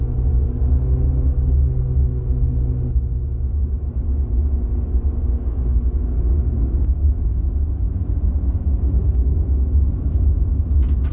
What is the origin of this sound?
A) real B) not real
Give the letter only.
A